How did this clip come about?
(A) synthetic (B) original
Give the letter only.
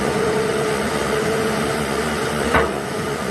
A